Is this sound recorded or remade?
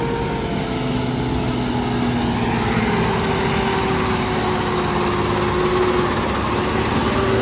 recorded